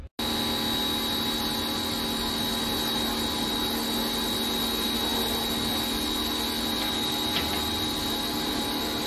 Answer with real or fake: real